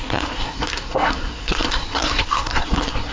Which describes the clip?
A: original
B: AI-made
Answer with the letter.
B